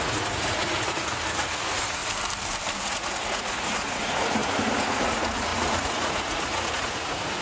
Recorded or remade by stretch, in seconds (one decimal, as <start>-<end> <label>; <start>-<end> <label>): 0.0-2.0 remade; 2.0-2.8 recorded; 2.8-7.4 remade